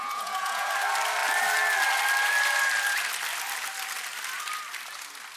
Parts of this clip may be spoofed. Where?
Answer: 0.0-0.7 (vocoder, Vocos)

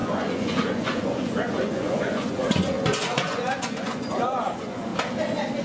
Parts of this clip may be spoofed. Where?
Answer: 0.0-4.9 (vocoder, Vocos)

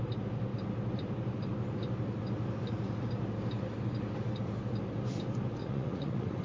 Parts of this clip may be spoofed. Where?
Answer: 5.6-6.4 (vocoder, Vocos)

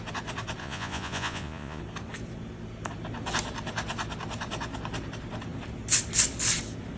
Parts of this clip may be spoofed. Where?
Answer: 0.6-1.8 (vocoder, Vocos)

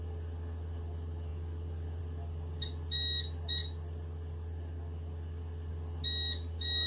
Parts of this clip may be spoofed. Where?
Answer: none

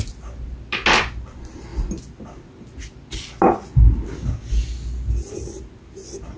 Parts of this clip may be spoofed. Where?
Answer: none